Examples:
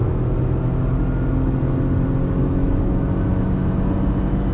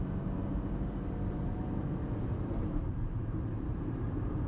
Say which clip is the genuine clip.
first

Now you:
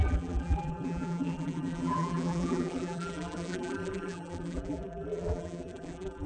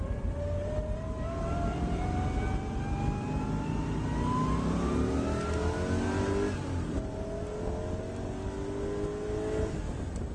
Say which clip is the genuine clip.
second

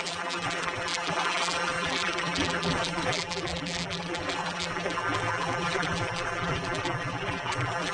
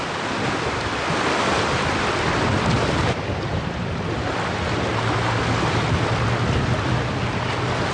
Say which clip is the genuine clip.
second